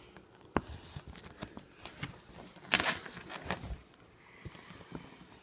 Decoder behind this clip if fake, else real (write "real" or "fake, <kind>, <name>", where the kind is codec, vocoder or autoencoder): real